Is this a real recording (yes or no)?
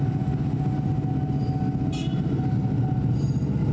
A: yes